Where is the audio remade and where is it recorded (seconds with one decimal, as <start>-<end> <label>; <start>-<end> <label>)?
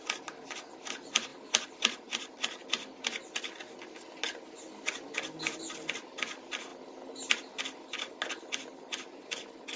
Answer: 0.0-9.8 recorded